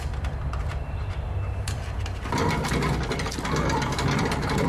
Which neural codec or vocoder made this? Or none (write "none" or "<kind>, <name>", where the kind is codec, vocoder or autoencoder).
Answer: vocoder, BigVGAN v2